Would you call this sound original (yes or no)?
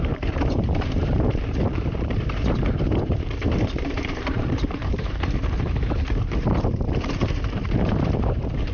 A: no